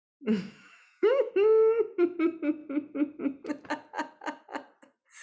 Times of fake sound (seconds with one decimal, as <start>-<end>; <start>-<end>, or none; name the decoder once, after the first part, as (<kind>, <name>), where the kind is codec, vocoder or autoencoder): 0.0-1.3 (autoencoder, DAC-VAE)